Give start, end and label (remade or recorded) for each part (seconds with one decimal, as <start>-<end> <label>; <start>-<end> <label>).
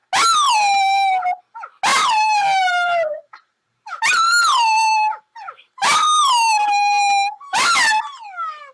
0.0-1.9 recorded; 1.9-5.2 remade; 5.2-8.7 recorded